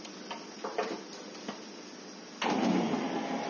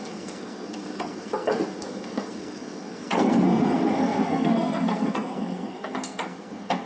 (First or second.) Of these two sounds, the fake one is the second